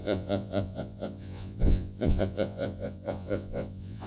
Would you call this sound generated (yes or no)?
yes